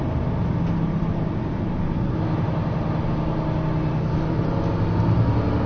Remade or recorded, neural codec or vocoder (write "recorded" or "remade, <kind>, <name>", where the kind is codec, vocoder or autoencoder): recorded